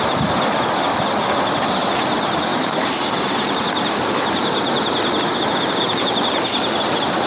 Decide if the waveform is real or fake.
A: real